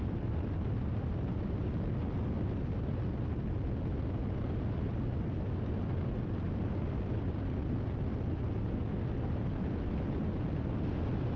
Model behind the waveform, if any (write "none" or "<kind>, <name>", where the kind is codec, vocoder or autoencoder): none